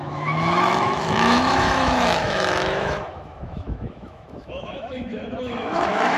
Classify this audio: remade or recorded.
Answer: remade